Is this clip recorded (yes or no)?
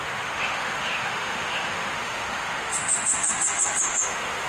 no